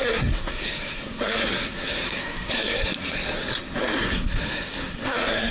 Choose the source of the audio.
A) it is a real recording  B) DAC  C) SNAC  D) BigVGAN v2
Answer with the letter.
C